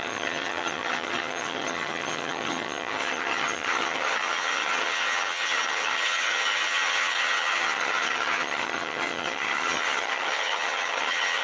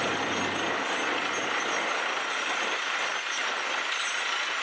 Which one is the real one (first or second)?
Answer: second